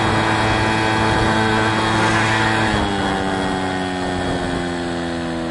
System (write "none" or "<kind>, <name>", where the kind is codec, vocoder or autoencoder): none